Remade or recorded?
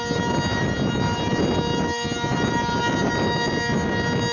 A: recorded